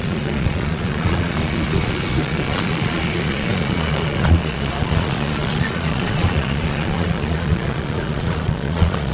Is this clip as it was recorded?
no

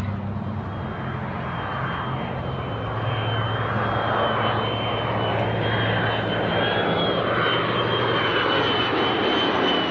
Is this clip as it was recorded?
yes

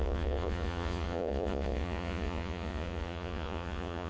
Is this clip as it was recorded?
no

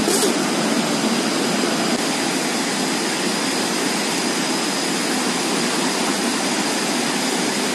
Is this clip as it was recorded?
yes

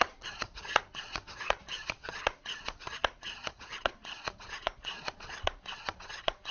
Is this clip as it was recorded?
no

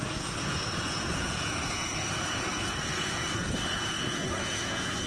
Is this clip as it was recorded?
no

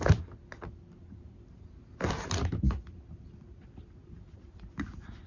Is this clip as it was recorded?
yes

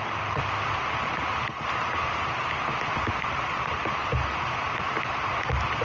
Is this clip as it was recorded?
yes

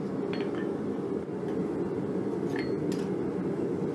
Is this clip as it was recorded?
yes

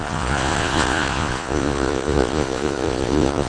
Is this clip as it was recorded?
no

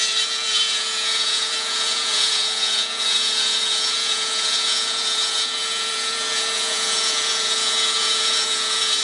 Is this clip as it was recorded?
no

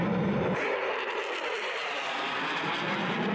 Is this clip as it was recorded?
yes